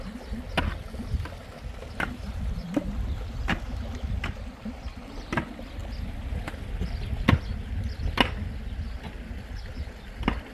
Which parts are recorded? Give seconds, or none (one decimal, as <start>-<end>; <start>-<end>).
0.0-10.5